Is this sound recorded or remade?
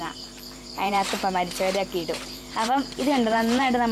remade